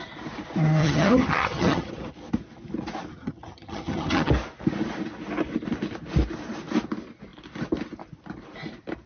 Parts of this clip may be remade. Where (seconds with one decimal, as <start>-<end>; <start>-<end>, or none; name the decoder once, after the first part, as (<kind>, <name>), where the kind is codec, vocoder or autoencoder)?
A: 0.8-1.9 (vocoder, HiFi-GAN); 3.1-4.3